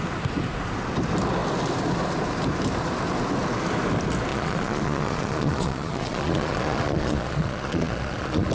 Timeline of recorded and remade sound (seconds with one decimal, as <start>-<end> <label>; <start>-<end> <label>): 0.0-4.3 recorded; 4.3-8.5 remade